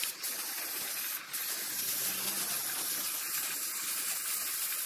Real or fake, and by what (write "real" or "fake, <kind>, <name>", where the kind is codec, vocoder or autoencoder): real